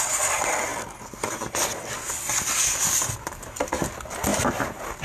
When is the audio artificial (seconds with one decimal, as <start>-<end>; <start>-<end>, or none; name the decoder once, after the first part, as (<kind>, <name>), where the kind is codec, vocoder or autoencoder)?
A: none